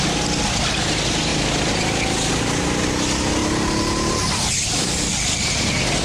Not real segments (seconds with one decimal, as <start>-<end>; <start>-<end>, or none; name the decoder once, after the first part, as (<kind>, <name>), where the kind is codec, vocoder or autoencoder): none